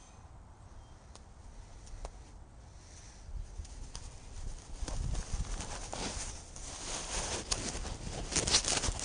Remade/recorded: recorded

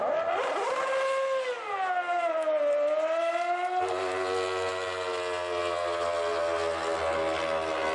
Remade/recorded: recorded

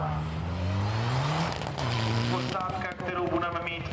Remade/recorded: recorded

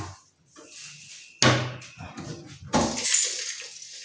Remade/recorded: recorded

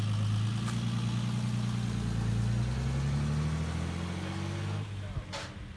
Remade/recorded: recorded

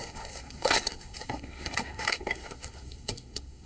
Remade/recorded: remade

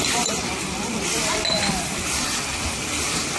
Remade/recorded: recorded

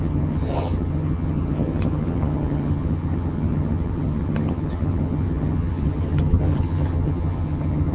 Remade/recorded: remade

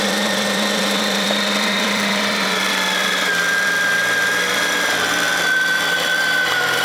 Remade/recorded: remade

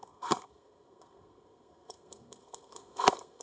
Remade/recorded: remade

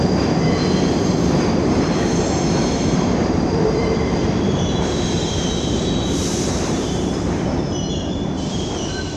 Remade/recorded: remade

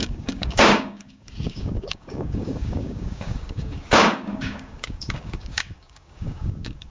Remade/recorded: remade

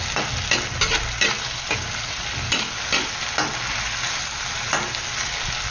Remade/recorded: recorded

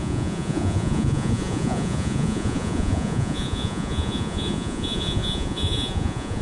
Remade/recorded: remade